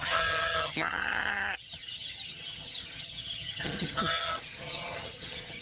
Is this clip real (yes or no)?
no